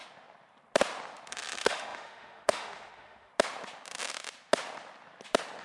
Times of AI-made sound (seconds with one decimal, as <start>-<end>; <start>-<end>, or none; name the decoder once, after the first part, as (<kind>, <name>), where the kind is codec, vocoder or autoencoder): 1.3-3.3 (autoencoder, DAC-VAE)